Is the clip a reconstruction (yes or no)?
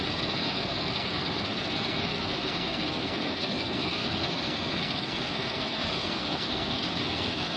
yes